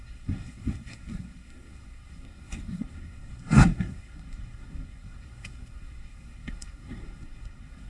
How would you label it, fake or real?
fake